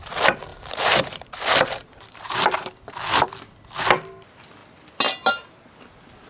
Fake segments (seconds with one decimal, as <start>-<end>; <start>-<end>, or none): 0.5-1.3; 1.8-2.6